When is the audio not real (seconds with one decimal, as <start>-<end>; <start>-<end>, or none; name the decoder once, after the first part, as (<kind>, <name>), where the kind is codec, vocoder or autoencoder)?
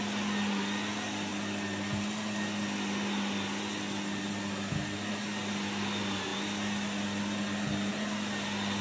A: none